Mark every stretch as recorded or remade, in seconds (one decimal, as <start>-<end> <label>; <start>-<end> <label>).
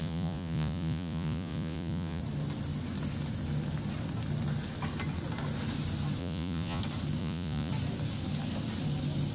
0.0-2.2 remade; 2.2-6.2 recorded; 6.2-6.8 remade; 6.8-7.2 recorded; 7.2-7.7 remade; 7.7-9.3 recorded